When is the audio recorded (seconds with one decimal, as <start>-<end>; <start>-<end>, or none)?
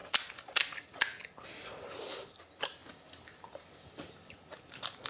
1.1-2.0; 2.8-3.3